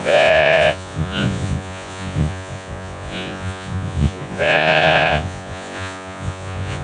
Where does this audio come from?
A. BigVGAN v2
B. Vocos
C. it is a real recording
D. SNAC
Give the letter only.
B